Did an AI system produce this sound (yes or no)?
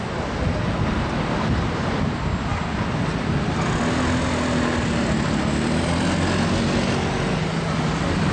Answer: no